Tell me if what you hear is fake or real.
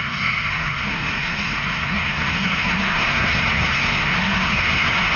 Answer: fake